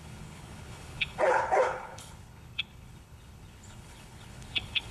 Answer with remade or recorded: remade